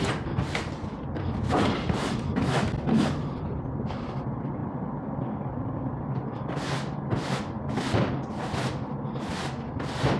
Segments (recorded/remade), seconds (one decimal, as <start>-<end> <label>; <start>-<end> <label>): 0.0-10.2 recorded